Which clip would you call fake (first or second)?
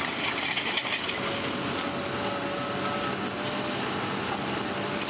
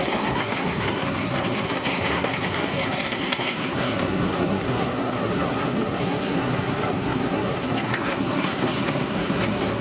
second